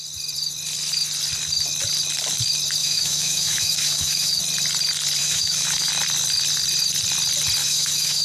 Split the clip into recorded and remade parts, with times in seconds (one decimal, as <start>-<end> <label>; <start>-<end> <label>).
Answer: 0.0-2.8 recorded; 2.8-4.4 remade; 4.4-5.2 recorded; 5.2-5.9 remade; 5.9-7.6 recorded; 7.6-8.2 remade